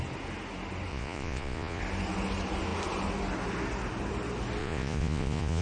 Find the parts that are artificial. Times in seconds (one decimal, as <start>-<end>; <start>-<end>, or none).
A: 0.9-1.8; 4.6-5.6